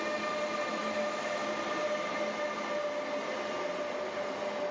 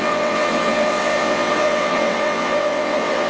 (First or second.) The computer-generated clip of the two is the second